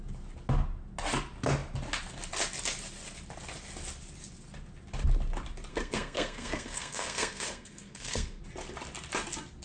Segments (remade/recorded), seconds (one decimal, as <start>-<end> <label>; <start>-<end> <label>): 0.0-5.7 recorded; 5.7-8.4 remade; 8.4-9.6 recorded